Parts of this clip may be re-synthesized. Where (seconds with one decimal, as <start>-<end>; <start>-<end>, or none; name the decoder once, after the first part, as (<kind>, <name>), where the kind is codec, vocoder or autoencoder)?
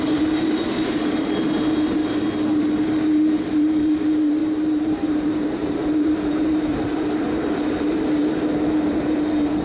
0.0-2.0 (vocoder, BigVGAN v2); 2.7-9.6